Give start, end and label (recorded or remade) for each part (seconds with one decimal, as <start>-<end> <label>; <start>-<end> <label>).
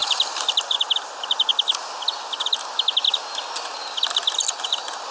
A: 0.0-1.5 remade; 1.5-4.6 recorded; 4.6-5.1 remade